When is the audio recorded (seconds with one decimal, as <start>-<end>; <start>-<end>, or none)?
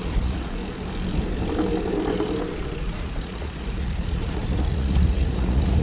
0.6-2.8